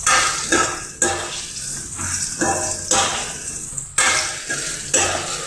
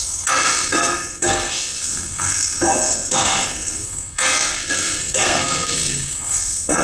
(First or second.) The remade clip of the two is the second